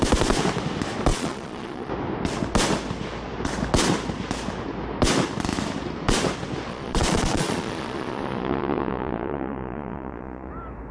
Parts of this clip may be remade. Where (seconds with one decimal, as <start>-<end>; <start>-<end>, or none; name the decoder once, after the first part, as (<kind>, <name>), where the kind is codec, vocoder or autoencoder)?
1.1-1.9 (vocoder, Vocos); 6.7-10.5